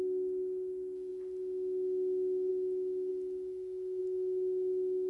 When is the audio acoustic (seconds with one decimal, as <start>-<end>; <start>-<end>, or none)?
0.0-5.1